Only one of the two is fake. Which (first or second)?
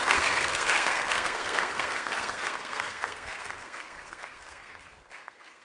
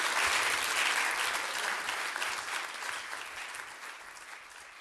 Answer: first